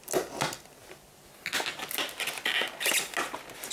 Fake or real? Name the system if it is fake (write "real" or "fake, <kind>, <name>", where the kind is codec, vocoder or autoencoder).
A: real